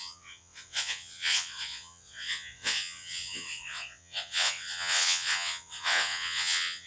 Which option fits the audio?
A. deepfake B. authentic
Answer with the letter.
A